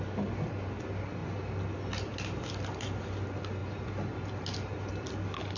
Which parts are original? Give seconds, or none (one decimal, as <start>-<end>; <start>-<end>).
0.0-5.6